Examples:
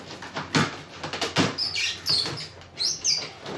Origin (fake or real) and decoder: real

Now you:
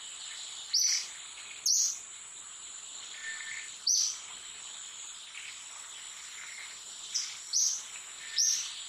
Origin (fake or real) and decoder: real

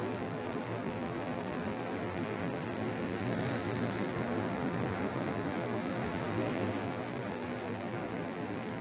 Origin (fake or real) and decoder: fake, vocoder, BigVGAN v2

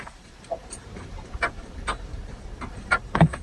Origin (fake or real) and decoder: fake, vocoder, BigVGAN v2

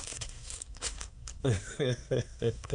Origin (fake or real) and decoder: fake, codec, SNAC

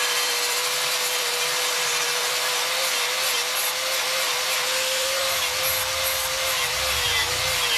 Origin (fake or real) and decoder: fake, vocoder, BigVGAN v2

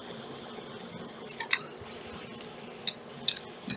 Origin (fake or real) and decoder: real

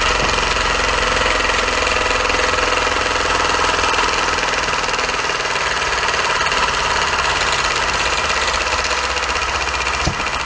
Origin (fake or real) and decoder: real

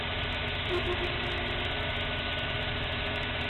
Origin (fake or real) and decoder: real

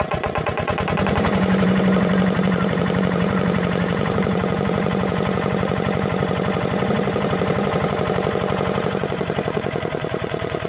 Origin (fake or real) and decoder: fake, vocoder, Vocos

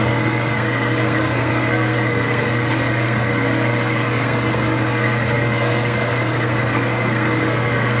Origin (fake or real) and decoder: fake, codec, SNAC